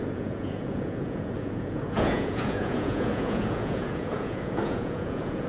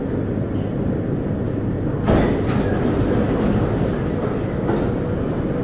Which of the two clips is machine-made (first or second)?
first